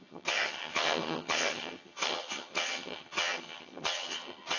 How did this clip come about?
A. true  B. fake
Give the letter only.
B